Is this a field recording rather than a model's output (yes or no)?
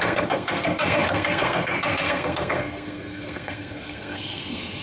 no